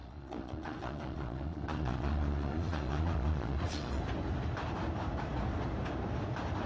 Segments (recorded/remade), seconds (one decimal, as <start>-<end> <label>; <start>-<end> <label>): 0.0-4.0 remade; 4.0-6.7 recorded